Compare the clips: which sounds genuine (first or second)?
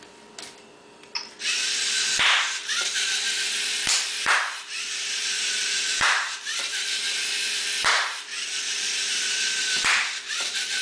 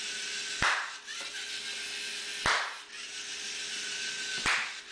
second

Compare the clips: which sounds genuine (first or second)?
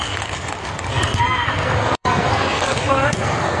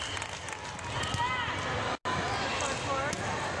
second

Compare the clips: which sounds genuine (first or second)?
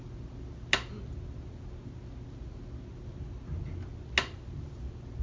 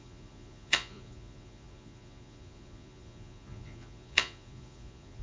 first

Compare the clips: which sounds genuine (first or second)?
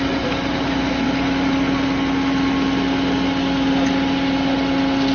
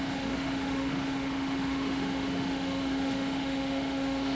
first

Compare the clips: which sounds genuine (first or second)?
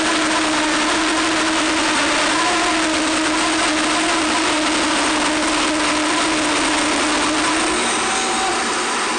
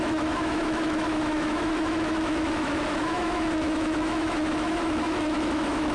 first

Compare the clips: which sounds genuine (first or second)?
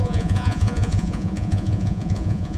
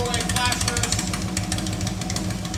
second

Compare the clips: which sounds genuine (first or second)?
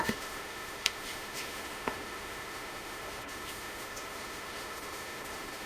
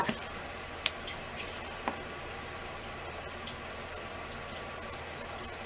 second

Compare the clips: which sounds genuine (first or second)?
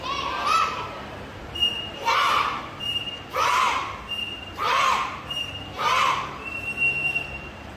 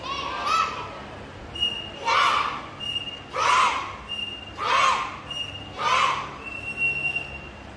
second